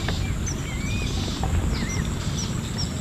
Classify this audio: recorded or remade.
recorded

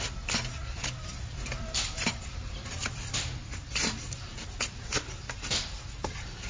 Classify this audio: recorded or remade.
remade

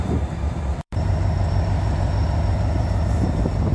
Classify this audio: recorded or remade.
remade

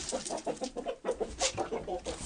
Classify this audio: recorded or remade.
remade